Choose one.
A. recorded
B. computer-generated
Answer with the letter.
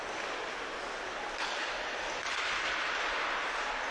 A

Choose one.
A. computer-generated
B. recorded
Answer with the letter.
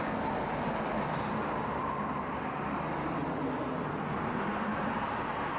B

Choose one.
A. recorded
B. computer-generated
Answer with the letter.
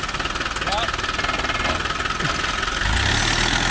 A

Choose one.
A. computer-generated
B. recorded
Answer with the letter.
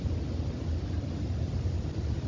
B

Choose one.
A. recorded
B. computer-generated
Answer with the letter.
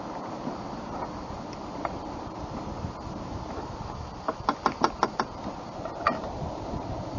A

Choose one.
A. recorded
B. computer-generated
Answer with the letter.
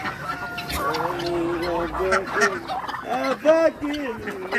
A